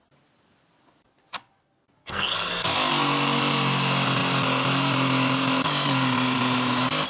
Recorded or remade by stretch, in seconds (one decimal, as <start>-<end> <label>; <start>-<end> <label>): 0.0-2.0 recorded; 2.0-2.5 remade; 2.5-7.1 recorded